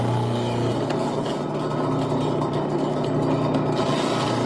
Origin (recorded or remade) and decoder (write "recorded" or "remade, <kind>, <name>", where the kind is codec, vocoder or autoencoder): recorded